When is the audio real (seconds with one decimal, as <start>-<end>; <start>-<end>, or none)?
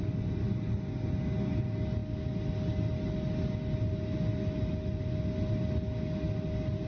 0.0-6.9